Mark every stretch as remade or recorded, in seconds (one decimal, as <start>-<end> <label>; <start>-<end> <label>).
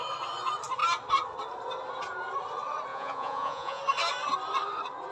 0.0-2.9 recorded; 2.9-3.8 remade; 3.8-5.1 recorded